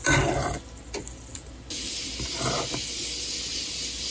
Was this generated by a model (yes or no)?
no